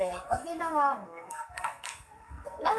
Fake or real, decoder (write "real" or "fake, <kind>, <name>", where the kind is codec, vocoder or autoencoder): fake, codec, SNAC